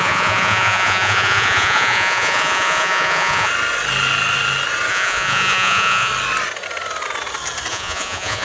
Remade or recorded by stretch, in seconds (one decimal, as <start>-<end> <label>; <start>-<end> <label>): 0.0-3.5 remade; 3.5-4.9 recorded; 4.9-6.1 remade; 6.1-7.7 recorded; 7.7-8.4 remade